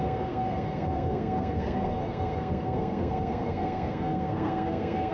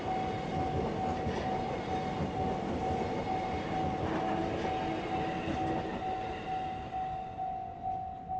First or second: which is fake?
first